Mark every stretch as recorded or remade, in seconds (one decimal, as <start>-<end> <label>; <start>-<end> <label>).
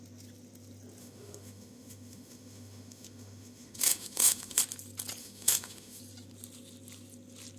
0.0-1.0 recorded; 1.0-4.6 remade; 4.6-5.2 recorded; 5.2-6.0 remade; 6.0-7.6 recorded